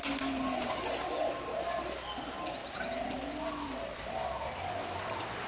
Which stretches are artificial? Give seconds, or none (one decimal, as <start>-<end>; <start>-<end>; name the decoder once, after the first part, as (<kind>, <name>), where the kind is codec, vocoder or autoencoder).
none